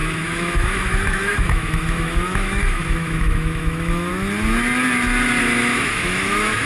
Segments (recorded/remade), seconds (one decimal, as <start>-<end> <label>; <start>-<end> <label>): 0.0-4.1 remade; 4.1-5.4 recorded; 5.4-6.7 remade